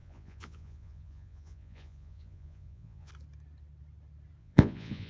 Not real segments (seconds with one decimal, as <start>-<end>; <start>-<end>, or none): 0.0-3.1; 4.4-5.1